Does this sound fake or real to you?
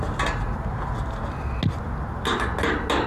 real